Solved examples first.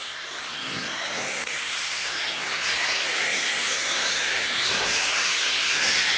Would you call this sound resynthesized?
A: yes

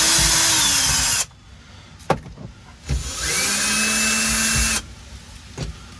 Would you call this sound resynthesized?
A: no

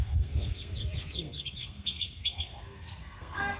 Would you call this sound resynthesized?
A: yes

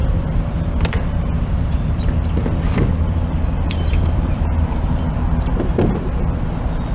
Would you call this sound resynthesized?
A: yes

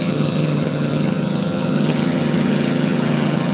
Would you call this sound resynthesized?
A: yes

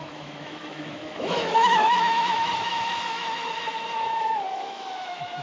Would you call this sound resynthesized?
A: yes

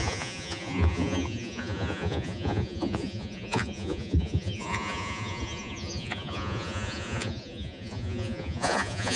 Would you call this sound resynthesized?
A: yes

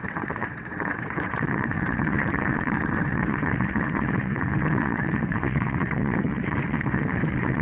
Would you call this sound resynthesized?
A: yes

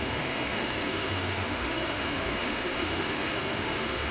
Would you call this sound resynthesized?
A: yes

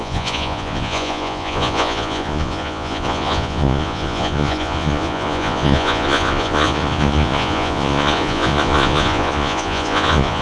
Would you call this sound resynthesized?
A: yes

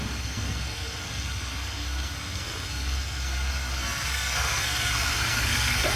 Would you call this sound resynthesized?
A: yes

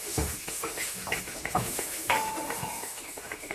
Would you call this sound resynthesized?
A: yes